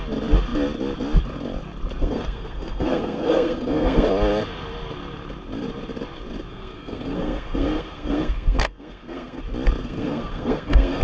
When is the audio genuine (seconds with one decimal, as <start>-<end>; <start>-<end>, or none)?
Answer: 0.0-2.0; 4.1-6.5; 9.4-9.8